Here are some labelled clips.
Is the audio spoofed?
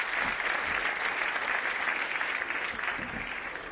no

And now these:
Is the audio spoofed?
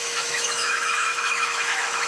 yes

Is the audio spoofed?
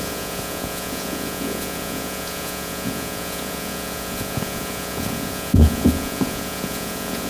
yes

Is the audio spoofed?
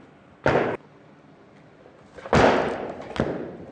no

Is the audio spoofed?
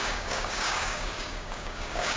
yes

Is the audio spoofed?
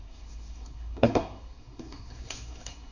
yes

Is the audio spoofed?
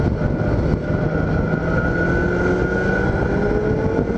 no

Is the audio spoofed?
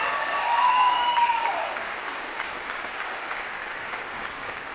yes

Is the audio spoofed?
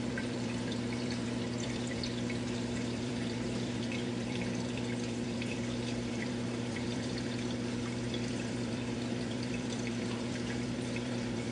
yes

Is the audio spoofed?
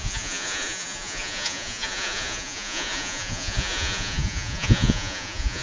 yes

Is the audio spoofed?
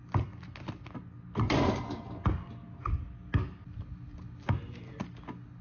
no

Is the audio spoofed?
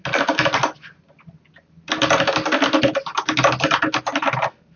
no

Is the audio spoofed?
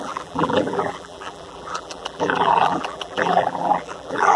yes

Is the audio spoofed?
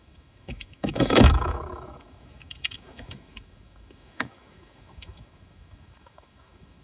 yes